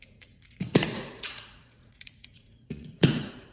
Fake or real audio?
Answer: fake